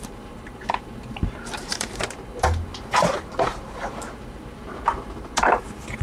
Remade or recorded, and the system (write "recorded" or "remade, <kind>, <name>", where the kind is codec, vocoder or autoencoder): remade, vocoder, BigVGAN v2